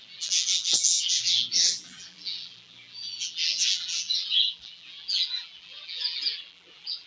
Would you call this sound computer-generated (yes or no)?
yes